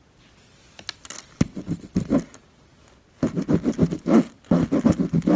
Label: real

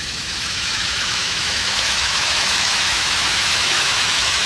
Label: fake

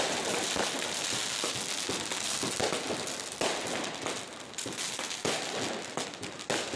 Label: real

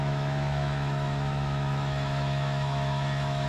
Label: fake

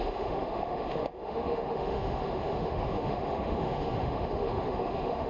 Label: fake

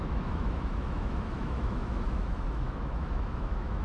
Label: fake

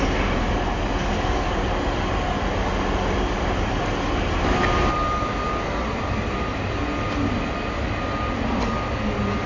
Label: real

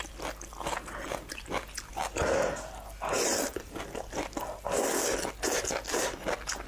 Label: real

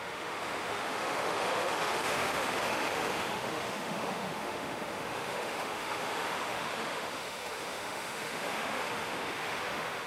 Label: fake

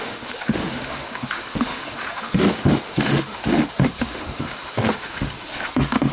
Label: fake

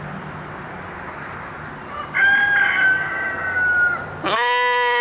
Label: real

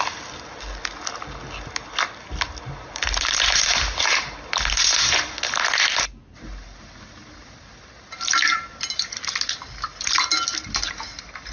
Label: real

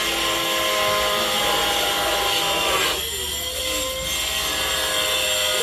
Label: real